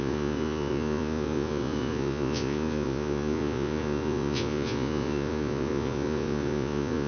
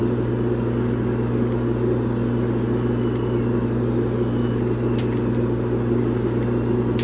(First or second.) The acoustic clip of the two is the second